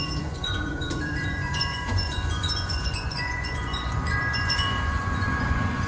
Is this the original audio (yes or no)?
no